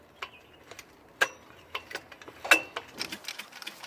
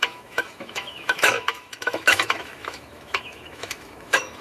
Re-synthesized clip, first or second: second